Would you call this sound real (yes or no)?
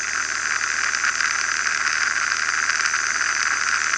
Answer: yes